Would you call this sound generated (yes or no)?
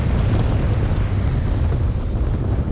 no